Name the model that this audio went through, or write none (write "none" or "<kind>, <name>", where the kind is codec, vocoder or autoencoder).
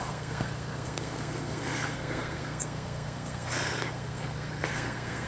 codec, SNAC